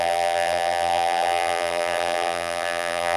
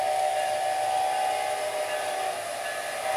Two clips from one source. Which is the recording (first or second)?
second